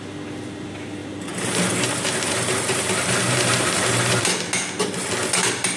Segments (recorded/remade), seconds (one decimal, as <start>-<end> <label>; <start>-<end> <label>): 0.0-1.0 recorded; 1.0-4.2 remade; 4.2-5.8 recorded